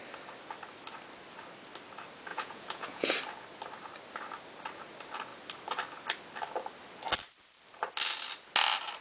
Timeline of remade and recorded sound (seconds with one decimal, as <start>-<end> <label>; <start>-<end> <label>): 0.0-2.3 recorded; 2.3-3.1 remade; 3.1-9.0 recorded